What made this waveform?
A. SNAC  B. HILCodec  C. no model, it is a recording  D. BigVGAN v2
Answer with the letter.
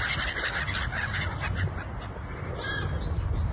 C